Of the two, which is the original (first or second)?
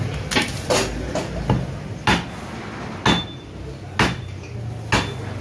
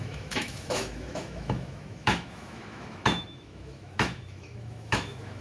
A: first